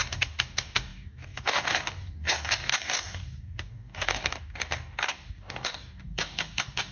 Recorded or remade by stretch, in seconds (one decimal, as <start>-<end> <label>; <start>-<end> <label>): 0.0-6.9 remade